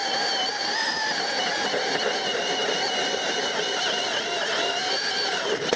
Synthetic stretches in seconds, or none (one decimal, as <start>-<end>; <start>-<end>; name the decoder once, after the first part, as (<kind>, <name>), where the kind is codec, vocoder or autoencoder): 0.0-1.5 (vocoder, BigVGAN v2); 4.8-5.3